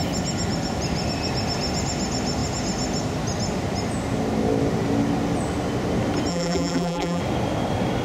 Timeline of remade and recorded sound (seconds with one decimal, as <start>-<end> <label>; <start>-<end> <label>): 0.0-6.3 recorded; 6.3-7.2 remade; 7.2-8.0 recorded